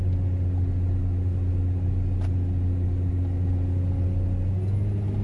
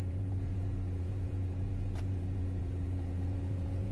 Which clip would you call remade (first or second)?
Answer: second